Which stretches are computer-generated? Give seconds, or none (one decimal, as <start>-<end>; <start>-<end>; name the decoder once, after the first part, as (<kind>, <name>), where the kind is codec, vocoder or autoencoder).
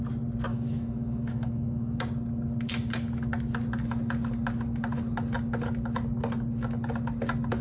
0.5-2.0 (autoencoder, DAC-VAE)